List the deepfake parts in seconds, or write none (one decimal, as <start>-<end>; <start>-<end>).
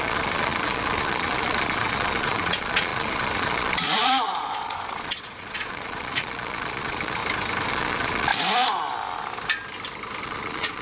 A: 0.0-7.2; 7.7-8.3; 10.2-10.8